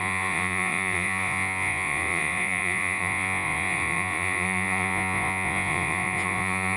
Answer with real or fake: fake